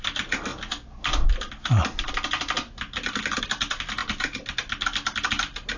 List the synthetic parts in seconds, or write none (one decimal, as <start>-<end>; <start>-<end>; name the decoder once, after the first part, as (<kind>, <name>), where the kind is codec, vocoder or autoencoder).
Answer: none

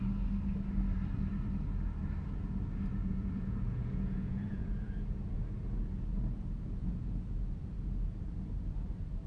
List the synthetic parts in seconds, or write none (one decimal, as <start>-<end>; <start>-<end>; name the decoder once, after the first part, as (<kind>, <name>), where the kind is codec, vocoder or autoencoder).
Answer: 3.0-5.4 (vocoder, Vocos); 6.8-7.3

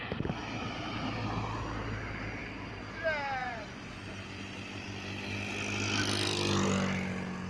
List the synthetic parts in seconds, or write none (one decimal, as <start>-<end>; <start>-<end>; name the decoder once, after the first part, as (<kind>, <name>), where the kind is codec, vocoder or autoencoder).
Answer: 3.4-4.0 (vocoder, Vocos)